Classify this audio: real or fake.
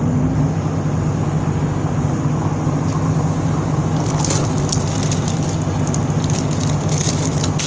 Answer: real